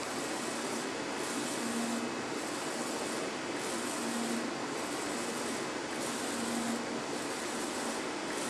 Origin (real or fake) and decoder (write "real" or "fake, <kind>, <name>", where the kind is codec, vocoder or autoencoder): real